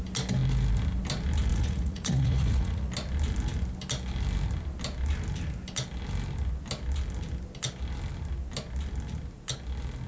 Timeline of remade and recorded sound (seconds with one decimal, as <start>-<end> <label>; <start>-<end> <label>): 0.0-1.5 recorded; 1.5-2.9 remade; 2.9-10.1 recorded

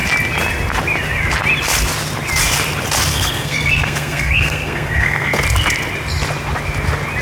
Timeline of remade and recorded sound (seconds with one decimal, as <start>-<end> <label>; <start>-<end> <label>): 0.0-3.1 recorded; 3.1-5.4 remade; 5.4-7.2 recorded

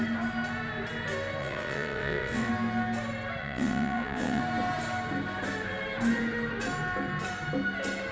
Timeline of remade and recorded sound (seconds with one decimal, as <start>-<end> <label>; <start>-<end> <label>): 0.0-1.4 recorded; 1.4-2.5 remade; 2.5-3.4 recorded; 3.4-4.4 remade; 4.4-8.1 recorded

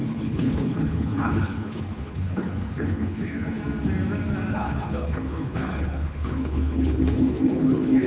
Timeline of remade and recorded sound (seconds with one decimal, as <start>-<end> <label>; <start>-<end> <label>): 0.0-3.6 remade; 3.6-4.5 recorded; 4.5-8.1 remade

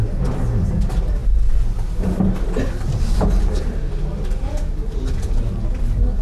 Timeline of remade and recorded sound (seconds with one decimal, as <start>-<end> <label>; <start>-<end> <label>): 0.0-6.2 recorded

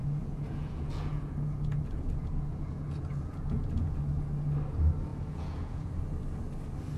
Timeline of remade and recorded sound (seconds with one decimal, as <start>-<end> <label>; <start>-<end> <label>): 0.0-4.0 remade; 4.0-5.1 recorded; 5.1-5.9 remade; 5.9-7.0 recorded

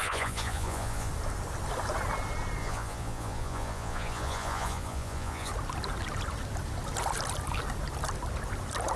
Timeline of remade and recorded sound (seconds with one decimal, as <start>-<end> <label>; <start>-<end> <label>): 0.0-1.1 remade; 1.1-2.6 recorded; 2.6-5.5 remade; 5.5-9.0 recorded

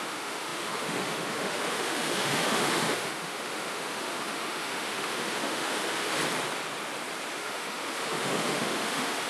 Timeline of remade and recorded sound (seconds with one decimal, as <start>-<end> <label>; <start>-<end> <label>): 0.0-6.2 remade; 6.2-7.3 recorded; 7.3-9.3 remade